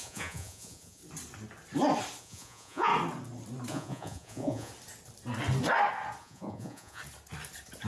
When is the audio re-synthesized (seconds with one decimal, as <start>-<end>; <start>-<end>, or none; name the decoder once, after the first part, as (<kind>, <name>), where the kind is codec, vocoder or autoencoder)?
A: 0.0-1.0 (vocoder, Vocos); 2.2-2.9; 3.7-4.7; 6.2-7.0